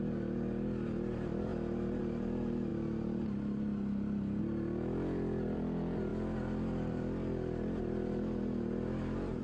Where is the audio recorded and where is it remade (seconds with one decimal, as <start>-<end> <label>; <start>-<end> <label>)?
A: 0.0-9.4 recorded